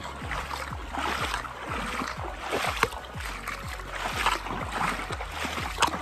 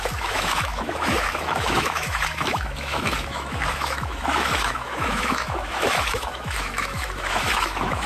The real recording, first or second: first